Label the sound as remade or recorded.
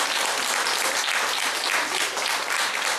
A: recorded